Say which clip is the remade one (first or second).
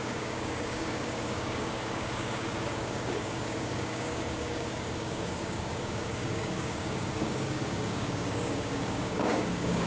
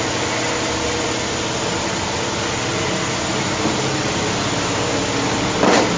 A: first